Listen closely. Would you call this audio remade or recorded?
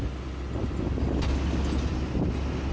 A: recorded